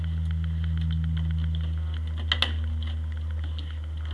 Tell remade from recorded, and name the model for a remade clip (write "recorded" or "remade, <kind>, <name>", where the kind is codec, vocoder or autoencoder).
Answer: recorded